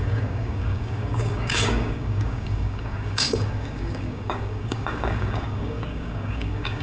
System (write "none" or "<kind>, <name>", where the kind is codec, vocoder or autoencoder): codec, DAC